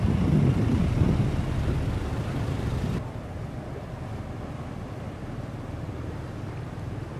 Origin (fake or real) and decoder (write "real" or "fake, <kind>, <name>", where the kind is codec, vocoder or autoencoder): real